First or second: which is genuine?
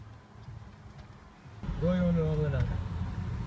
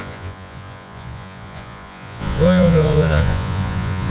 first